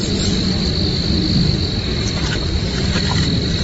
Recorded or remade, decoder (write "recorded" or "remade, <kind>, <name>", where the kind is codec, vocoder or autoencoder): recorded